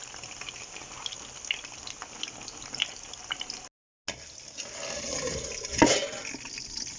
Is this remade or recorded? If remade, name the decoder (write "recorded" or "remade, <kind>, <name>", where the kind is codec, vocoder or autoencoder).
recorded